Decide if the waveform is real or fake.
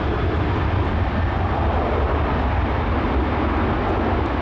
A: real